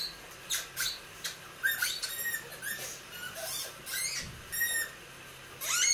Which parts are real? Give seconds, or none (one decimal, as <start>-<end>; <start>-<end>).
0.0-5.9